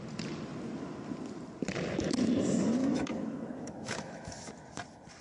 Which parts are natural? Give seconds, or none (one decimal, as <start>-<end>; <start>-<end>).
0.0-2.8; 4.5-5.2